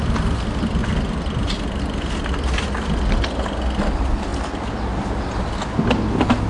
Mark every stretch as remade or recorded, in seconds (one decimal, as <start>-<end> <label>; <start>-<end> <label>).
0.0-6.5 recorded